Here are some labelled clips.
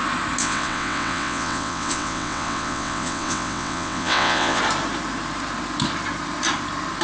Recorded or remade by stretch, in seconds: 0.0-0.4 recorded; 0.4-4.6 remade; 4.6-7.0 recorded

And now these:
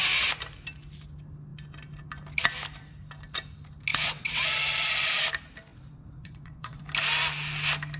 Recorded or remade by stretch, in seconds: 0.0-3.9 recorded; 3.9-4.4 remade; 4.4-5.7 recorded; 5.7-6.8 remade; 6.8-8.0 recorded